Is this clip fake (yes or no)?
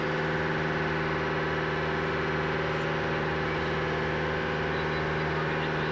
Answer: no